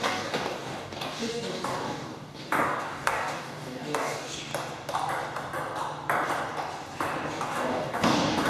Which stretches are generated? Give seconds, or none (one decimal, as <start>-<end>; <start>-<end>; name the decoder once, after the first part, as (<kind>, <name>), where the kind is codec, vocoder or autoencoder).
0.0-4.5 (codec, DAC); 7.3-8.5